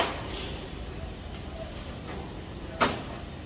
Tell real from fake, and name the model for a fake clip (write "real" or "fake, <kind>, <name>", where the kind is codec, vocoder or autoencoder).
fake, vocoder, BigVGAN v2